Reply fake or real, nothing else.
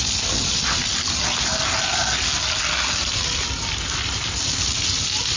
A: real